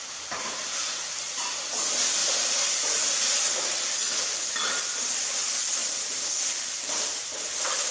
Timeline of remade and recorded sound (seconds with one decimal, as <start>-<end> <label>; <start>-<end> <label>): 0.0-2.2 recorded; 2.2-4.8 remade; 4.8-5.8 recorded; 5.8-7.2 remade; 7.2-7.9 recorded